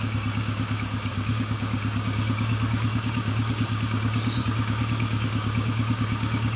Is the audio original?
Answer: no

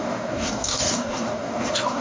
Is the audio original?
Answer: no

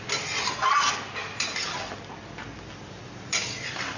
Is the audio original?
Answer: yes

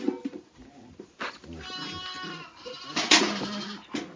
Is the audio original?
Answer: yes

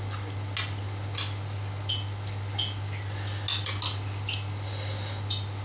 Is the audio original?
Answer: yes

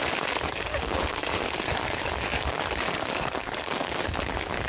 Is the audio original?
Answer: no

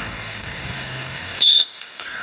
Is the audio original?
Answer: no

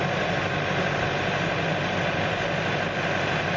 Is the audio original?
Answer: yes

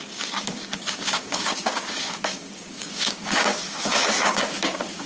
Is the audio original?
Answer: no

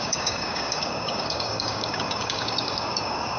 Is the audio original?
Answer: no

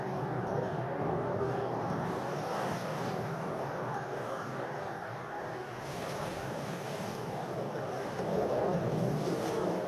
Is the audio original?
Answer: no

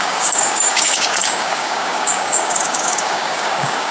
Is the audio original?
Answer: no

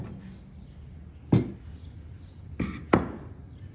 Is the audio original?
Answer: yes